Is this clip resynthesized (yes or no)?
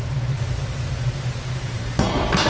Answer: yes